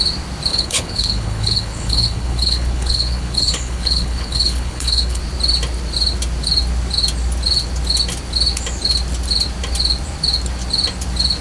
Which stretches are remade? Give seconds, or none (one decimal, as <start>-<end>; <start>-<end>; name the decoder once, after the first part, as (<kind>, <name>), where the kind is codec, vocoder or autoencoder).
0.5-5.2 (codec, HILCodec)